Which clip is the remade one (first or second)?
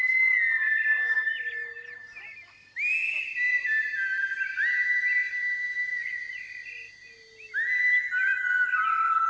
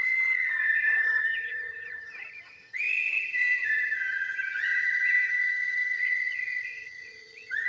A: second